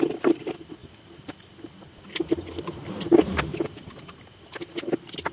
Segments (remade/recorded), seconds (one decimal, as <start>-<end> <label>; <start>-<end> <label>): 0.0-5.3 recorded